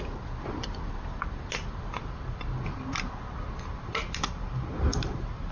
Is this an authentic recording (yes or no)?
yes